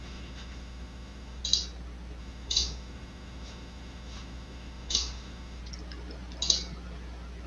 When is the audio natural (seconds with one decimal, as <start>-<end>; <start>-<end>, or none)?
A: 1.4-2.2; 5.6-7.5